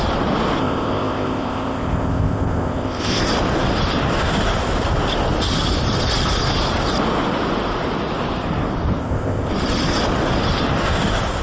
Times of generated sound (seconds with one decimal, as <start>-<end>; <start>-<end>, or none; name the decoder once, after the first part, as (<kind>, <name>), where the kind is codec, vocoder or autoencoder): 0.6-3.2 (codec, ZipCodec); 9.0-9.5